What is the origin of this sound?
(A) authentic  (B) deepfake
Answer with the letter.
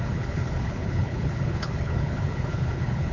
B